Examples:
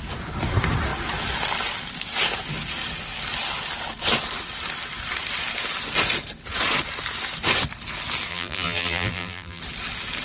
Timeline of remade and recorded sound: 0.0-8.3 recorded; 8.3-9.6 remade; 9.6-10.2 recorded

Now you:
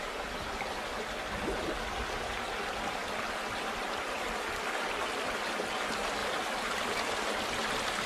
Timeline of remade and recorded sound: 0.0-6.2 recorded; 6.2-7.1 remade; 7.1-8.1 recorded

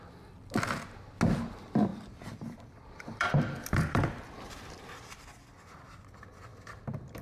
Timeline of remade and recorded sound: 0.0-1.9 recorded; 1.9-5.1 remade; 5.1-6.5 recorded; 6.5-7.2 remade

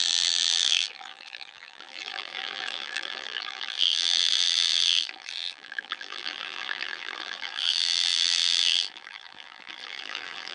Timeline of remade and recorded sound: 0.0-10.5 remade

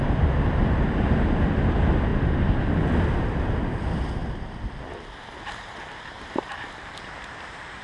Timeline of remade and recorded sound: 0.0-7.8 recorded

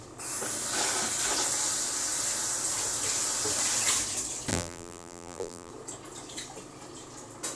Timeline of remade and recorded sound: 0.0-4.5 recorded; 4.5-5.7 remade; 5.7-7.6 recorded

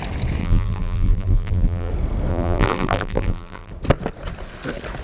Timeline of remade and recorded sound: 0.0-0.4 recorded; 0.4-1.9 remade; 1.9-2.3 recorded; 2.3-3.7 remade; 3.7-5.0 recorded

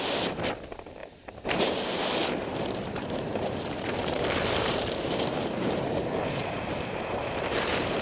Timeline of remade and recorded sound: 0.0-8.0 remade